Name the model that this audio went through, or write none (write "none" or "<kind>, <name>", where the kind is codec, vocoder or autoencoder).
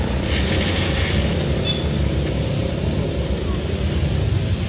none